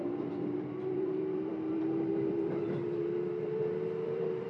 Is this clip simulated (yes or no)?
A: yes